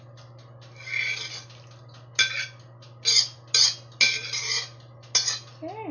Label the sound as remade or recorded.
recorded